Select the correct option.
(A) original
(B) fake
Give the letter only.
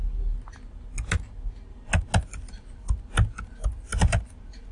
A